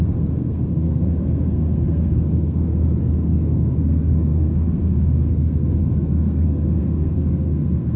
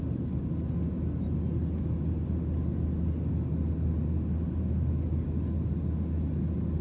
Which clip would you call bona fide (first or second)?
second